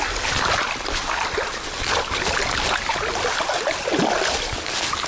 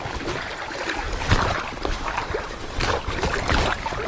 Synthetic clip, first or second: second